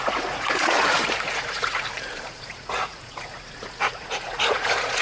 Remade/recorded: remade